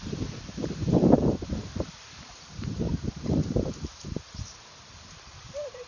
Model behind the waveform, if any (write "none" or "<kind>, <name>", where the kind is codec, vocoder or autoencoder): vocoder, BigVGAN v2